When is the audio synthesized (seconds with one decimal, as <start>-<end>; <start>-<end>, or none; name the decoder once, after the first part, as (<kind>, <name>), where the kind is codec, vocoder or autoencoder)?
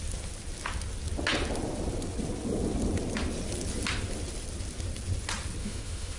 5.6-6.2 (autoencoder, DAC-VAE)